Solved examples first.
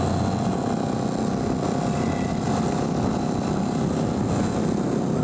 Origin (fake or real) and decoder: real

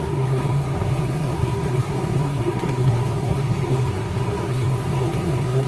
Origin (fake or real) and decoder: fake, codec, SNAC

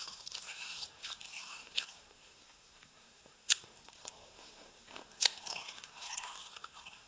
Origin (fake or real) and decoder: fake, codec, SNAC